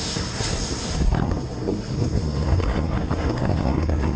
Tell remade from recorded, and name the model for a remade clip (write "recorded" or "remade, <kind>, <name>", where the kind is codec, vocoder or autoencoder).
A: remade, codec, SNAC